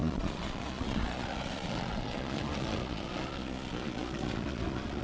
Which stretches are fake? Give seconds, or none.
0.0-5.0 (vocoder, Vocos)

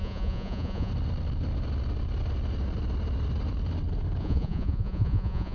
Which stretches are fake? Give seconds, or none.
0.0-0.9 (vocoder, Vocos); 4.2-5.5

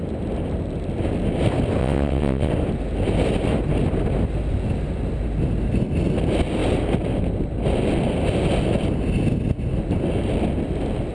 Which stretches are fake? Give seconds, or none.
1.8-2.5 (vocoder, WaveNeXt)

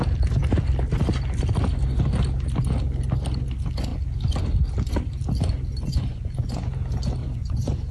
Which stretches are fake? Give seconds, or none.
5.9-6.7 (vocoder, Vocos); 7.2-7.9

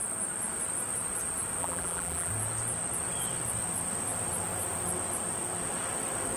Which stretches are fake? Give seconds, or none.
1.6-2.3 (vocoder, BigVGAN v2)

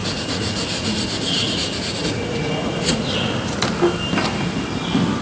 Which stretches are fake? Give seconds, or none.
0.0-3.1 (vocoder, Vocos)